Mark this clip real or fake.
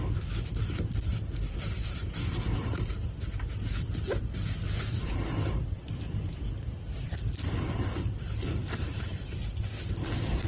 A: fake